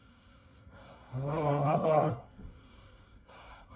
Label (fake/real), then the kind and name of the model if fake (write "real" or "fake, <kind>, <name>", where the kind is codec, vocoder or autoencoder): fake, codec, SNAC